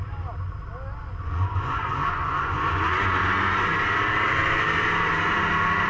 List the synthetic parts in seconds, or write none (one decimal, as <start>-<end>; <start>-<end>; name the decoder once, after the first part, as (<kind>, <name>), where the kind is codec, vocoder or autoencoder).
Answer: 1.0-3.2 (vocoder, Vocos)